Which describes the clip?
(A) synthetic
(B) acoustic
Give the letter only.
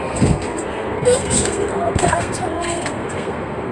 A